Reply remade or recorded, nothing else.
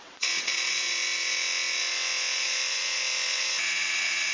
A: remade